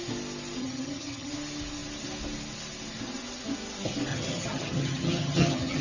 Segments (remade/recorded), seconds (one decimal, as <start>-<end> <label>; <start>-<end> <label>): 0.0-0.6 recorded; 0.6-1.3 remade; 1.3-4.1 recorded; 4.1-5.8 remade